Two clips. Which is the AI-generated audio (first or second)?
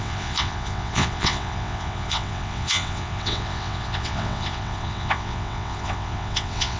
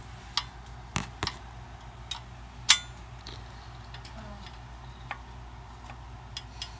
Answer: first